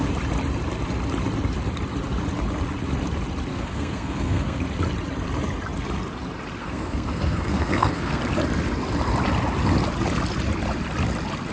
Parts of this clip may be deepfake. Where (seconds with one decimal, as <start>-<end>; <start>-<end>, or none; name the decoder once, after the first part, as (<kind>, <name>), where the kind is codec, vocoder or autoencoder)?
3.5-4.6 (codec, SNAC); 6.6-8.2